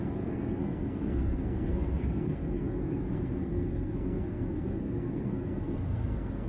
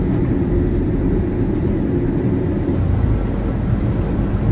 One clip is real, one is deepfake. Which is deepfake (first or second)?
first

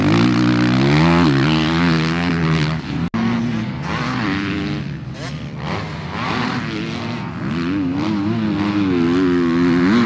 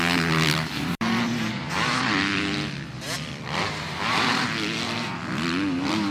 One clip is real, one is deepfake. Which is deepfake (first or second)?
second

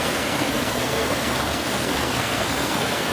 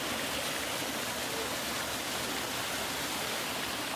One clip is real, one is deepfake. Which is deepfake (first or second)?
first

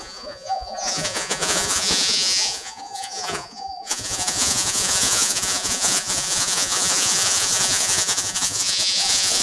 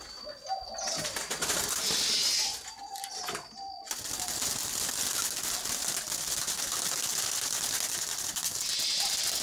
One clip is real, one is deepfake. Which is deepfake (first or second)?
first